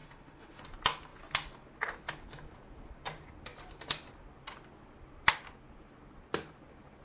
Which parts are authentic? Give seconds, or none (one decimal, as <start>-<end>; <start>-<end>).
0.6-7.0